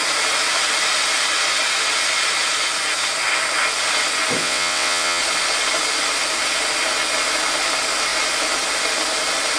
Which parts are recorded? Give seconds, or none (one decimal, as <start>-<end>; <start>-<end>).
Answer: 0.0-4.4; 5.2-9.6